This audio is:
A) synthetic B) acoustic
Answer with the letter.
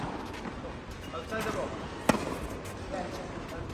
B